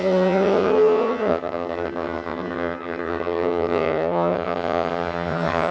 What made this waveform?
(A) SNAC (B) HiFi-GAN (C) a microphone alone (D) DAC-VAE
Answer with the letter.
B